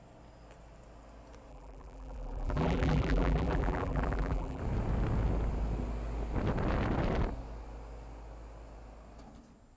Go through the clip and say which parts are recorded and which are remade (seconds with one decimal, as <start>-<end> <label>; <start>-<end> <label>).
0.0-1.5 recorded; 1.5-4.6 remade; 4.6-9.8 recorded